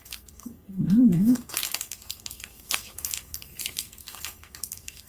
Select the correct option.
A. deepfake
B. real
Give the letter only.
A